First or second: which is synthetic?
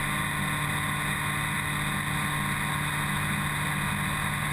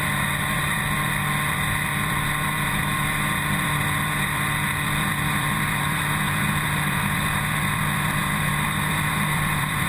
second